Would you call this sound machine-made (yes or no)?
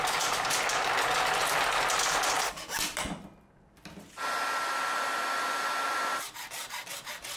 no